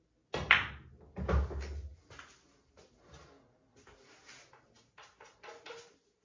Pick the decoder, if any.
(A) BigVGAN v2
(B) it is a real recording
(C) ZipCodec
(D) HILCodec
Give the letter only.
B